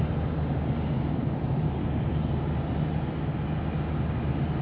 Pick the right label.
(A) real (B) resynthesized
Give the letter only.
A